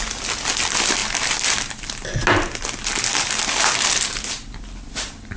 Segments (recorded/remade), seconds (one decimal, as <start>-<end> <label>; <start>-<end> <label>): 0.0-5.4 recorded